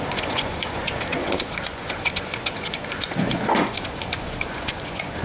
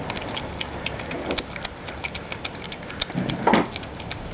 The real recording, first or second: second